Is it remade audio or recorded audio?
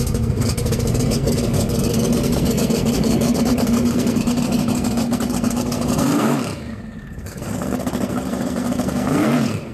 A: remade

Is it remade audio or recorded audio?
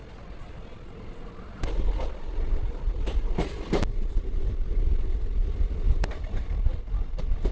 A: recorded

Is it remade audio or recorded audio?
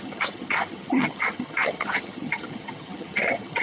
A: remade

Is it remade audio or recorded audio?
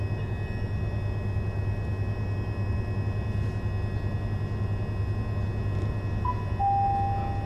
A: recorded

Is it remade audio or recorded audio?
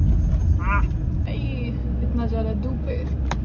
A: recorded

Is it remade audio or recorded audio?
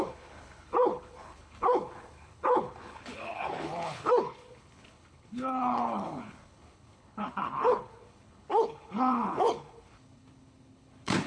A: remade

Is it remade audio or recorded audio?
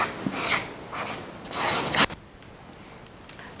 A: recorded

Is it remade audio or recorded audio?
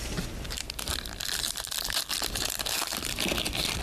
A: recorded